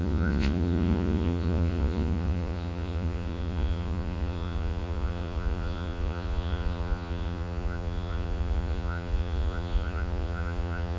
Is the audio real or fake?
fake